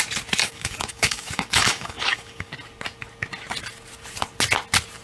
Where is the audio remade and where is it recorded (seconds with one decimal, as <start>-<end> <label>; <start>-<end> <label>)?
0.0-0.4 recorded; 0.4-2.5 remade; 2.5-5.0 recorded